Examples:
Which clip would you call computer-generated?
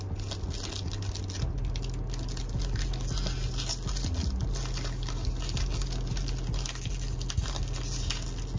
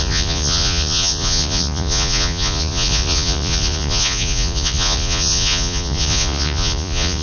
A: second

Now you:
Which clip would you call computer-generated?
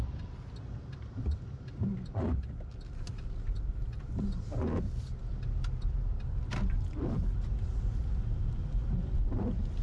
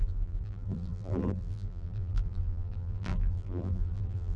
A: second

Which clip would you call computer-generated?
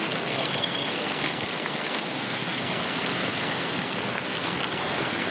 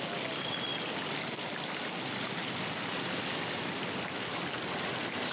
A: first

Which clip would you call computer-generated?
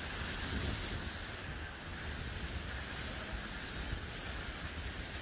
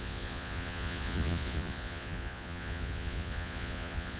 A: second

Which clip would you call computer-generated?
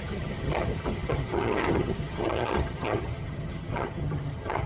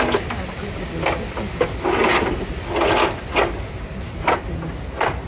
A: first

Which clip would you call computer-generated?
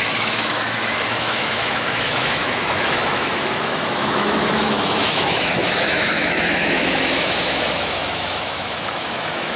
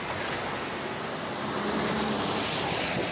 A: first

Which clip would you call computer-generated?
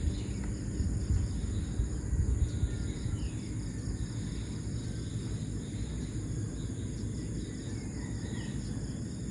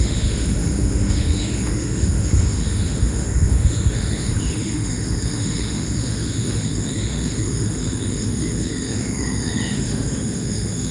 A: second